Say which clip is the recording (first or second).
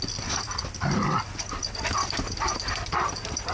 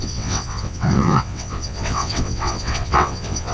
first